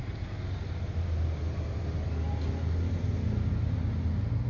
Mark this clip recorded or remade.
recorded